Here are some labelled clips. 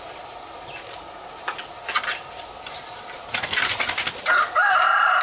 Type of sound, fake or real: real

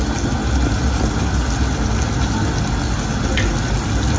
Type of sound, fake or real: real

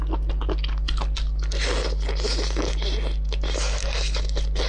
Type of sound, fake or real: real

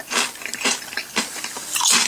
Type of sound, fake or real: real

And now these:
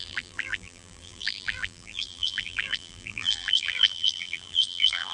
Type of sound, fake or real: fake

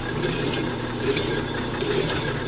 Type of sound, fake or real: real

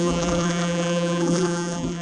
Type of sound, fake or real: fake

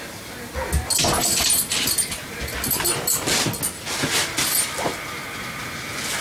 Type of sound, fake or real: real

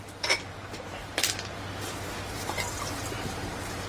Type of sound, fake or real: fake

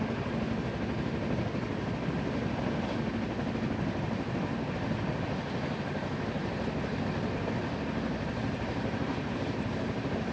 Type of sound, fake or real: real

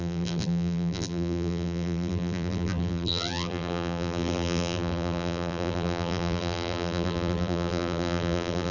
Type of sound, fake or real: fake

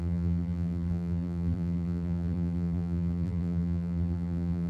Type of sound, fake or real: fake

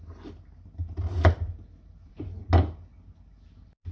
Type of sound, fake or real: real